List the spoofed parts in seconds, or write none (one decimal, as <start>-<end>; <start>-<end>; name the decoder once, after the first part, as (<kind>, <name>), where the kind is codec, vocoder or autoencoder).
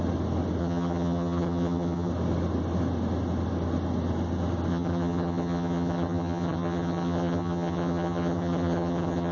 0.6-2.1 (vocoder, HiFi-GAN); 4.7-9.3